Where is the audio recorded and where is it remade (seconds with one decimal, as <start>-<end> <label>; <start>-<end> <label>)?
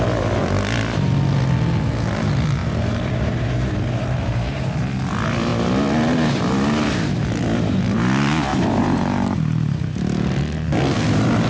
0.0-2.6 recorded; 2.6-4.7 remade; 4.7-8.5 recorded; 8.5-9.4 remade; 9.4-11.5 recorded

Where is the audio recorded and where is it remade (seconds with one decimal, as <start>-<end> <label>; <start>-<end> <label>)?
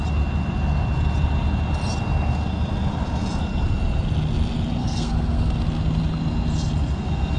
0.0-4.8 recorded; 4.8-5.6 remade; 5.6-7.4 recorded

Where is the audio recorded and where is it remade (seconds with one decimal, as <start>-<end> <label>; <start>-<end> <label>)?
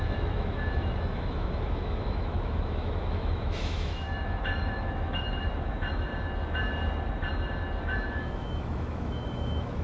0.0-6.1 remade; 6.1-7.8 recorded; 7.8-9.8 remade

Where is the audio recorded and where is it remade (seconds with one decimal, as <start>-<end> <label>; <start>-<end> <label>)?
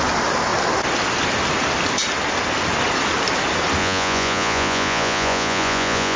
0.0-3.8 recorded; 3.8-6.2 remade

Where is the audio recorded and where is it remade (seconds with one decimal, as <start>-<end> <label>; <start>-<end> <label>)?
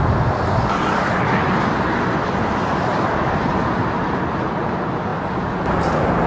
0.0-6.3 recorded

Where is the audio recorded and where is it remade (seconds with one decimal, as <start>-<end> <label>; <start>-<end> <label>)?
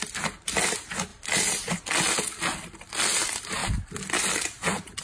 0.0-5.0 recorded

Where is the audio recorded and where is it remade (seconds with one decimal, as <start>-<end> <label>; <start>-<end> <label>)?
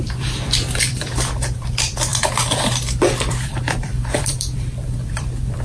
0.0-5.6 remade